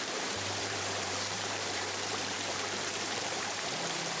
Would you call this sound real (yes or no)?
no